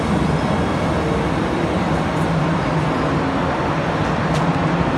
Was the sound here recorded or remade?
recorded